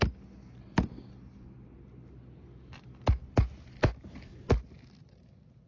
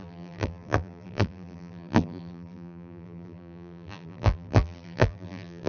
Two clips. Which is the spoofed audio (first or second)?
second